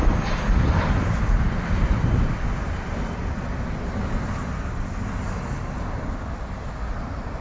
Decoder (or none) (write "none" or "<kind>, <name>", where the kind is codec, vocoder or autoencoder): none